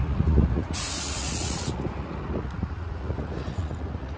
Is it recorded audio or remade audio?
remade